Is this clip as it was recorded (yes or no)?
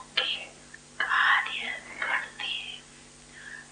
yes